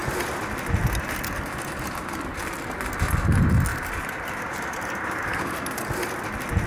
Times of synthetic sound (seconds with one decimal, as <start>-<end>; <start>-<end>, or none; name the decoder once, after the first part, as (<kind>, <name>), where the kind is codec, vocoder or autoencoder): 3.7-5.5 (vocoder, BigVGAN v2)